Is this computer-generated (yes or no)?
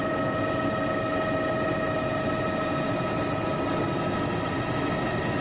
no